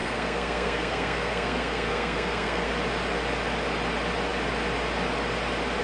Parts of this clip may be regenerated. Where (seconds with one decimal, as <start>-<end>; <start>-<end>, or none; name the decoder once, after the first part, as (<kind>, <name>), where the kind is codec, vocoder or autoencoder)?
0.0-2.7 (codec, SNAC)